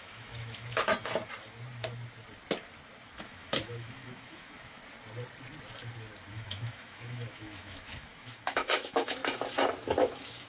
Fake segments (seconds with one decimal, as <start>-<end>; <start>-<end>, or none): 0.0-0.9; 3.2-4.8; 6.3-9.2; 10.0-10.5